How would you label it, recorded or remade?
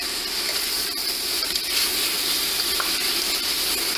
recorded